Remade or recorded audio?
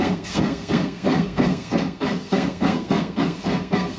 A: remade